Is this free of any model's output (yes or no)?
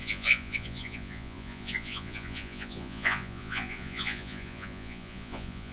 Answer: no